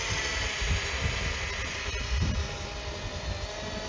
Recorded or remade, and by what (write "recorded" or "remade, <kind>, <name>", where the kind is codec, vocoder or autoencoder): recorded